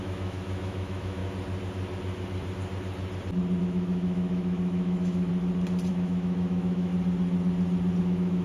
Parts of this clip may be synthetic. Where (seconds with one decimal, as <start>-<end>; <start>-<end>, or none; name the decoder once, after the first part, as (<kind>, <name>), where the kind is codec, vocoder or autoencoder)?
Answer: 0.0-1.2 (autoencoder, DAC-VAE); 3.6-5.3; 5.9-6.9; 8.0-8.4